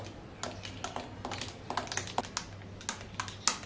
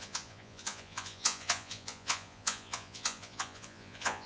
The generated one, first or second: second